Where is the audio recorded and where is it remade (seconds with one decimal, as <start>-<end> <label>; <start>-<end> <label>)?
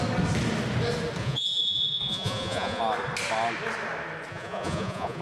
0.0-1.2 recorded; 1.2-2.8 remade; 2.8-4.3 recorded; 4.3-5.2 remade